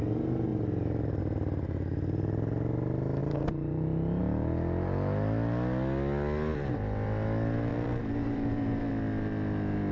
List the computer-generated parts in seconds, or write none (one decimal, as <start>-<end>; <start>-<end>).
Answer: 3.2-4.2; 7.7-8.9